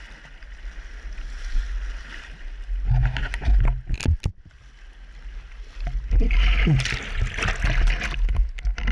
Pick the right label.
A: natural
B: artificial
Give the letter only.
A